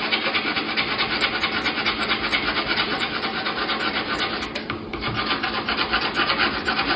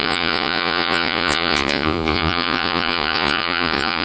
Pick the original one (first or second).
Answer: first